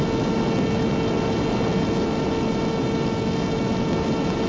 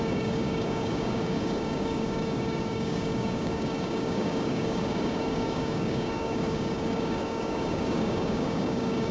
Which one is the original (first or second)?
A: first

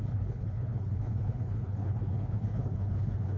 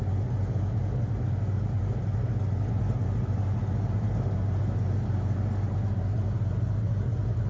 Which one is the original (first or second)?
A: second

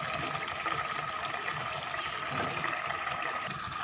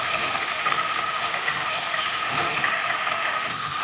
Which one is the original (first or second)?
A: first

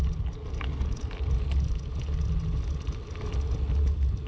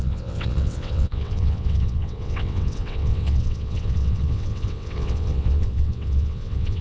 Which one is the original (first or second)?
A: first